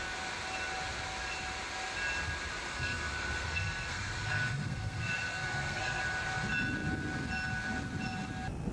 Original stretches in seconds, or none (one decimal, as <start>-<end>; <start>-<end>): 0.0-2.7; 6.0-8.7